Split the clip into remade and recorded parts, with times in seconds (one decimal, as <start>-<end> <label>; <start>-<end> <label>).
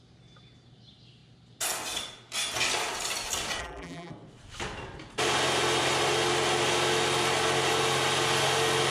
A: 0.0-3.6 recorded; 3.6-4.1 remade; 4.1-8.9 recorded